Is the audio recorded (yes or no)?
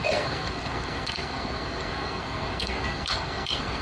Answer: no